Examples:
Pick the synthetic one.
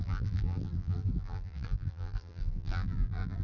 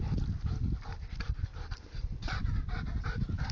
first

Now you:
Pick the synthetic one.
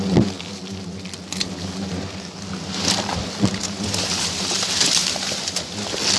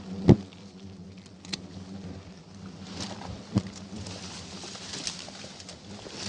second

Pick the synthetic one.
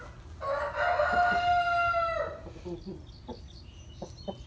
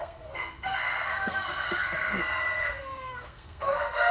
second